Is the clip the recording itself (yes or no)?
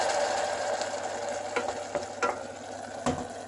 yes